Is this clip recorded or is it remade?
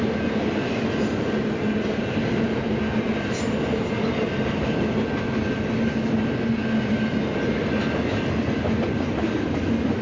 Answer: recorded